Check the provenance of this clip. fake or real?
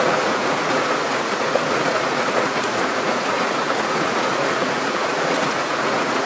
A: fake